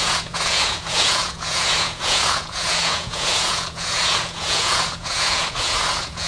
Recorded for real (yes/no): no